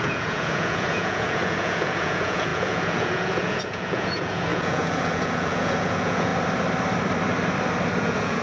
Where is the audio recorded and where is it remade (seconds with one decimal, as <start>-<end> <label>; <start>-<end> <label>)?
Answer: 0.0-6.3 remade; 6.3-8.0 recorded; 8.0-8.4 remade